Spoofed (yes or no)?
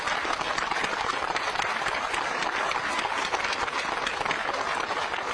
no